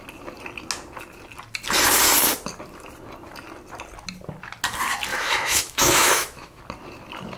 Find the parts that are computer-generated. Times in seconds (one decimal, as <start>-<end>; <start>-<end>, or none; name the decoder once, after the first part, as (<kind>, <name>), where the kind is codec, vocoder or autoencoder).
5.1-6.6 (autoencoder, DAC-VAE)